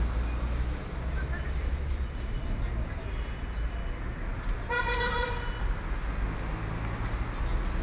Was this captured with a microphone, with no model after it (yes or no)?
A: yes